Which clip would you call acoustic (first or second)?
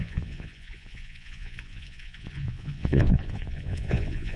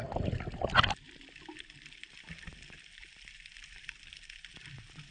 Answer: second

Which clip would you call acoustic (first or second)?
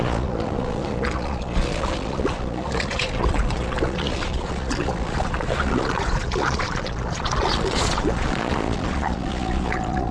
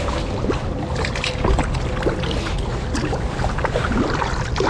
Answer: second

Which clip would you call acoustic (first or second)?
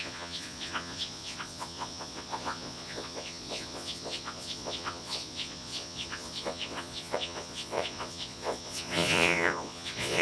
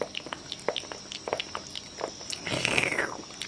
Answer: second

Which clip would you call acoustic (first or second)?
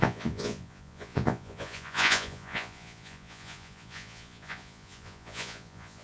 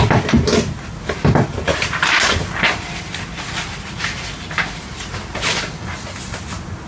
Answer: second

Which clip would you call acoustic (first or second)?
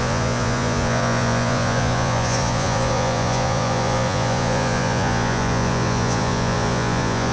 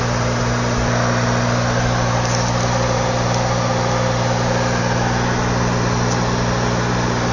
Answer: second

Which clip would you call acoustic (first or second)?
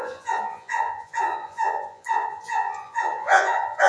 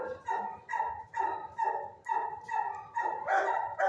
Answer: second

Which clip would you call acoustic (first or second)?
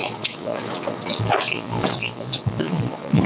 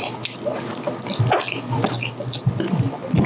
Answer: second